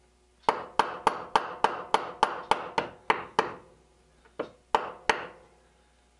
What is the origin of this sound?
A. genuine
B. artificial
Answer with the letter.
A